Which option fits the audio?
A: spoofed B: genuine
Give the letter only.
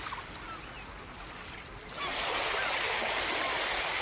B